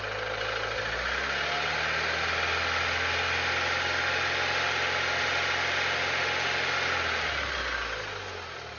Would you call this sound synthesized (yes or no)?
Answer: no